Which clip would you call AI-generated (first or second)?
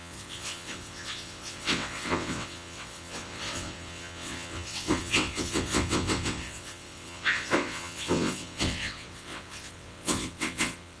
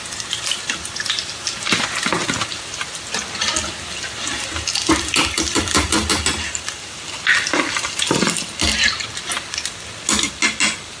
first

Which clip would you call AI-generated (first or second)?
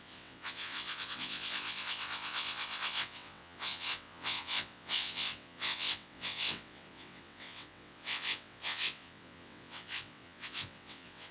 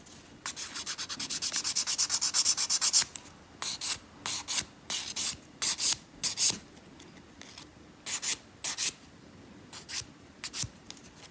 first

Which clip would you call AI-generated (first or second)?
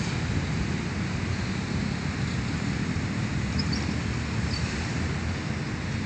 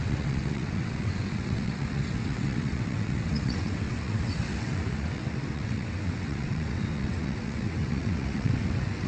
second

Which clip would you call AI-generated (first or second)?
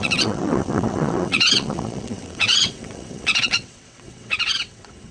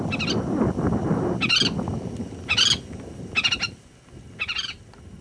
first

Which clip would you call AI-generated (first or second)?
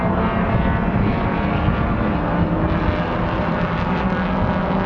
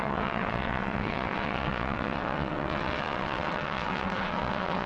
second